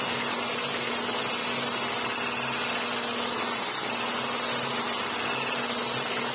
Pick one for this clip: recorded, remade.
recorded